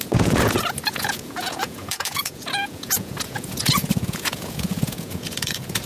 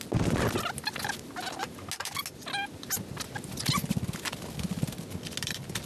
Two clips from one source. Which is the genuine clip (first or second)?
second